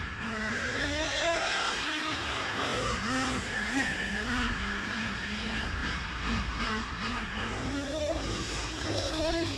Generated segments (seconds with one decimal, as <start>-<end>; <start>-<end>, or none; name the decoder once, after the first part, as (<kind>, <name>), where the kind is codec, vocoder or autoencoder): 0.0-9.6 (codec, SNAC)